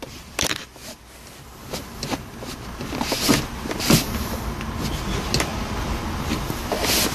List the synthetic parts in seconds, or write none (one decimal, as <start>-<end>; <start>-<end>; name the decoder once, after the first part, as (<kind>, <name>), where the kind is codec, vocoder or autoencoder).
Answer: none